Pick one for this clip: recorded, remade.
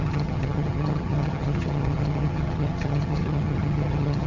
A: remade